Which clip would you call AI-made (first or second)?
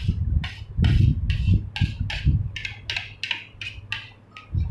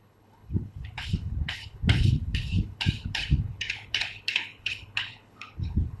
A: second